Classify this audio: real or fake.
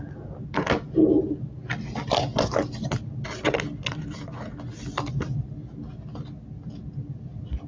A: real